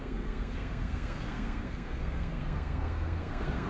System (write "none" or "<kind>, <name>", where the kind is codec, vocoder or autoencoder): codec, SNAC